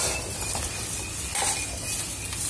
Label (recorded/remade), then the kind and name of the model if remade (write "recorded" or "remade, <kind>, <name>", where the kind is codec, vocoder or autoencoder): recorded